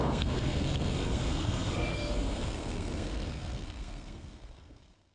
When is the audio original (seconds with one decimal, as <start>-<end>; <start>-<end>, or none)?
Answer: none